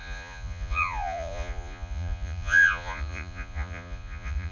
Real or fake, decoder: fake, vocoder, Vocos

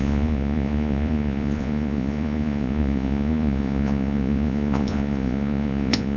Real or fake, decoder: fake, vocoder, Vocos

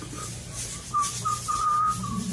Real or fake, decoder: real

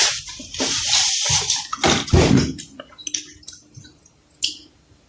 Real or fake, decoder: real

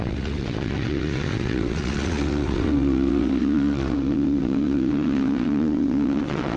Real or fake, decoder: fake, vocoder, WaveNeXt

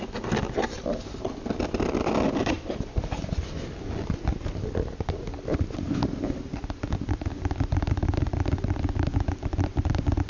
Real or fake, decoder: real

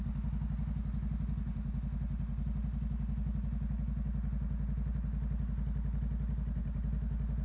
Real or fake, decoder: real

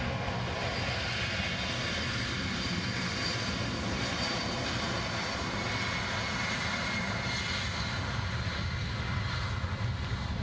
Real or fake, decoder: real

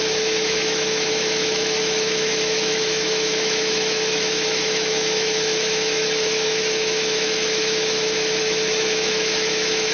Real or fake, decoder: fake, autoencoder, DAC-VAE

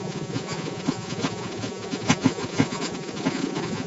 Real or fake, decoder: fake, vocoder, Vocos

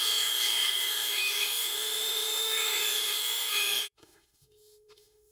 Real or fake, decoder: fake, autoencoder, DAC-VAE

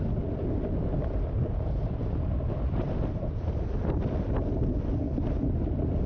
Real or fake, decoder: real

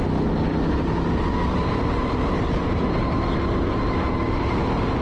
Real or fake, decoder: real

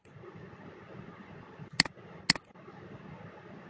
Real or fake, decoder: real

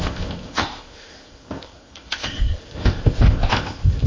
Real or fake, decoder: fake, codec, ZipCodec